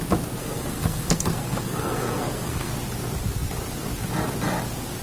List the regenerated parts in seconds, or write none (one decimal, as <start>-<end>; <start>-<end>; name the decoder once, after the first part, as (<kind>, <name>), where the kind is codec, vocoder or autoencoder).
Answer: 0.4-2.7 (codec, SNAC)